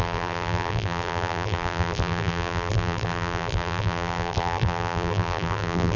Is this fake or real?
fake